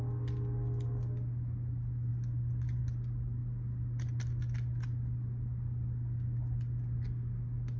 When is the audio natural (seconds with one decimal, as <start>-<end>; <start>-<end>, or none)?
0.0-7.8